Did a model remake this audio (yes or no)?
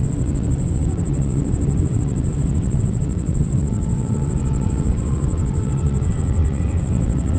yes